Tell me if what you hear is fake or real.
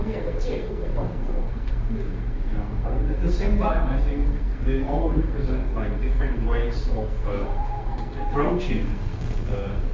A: fake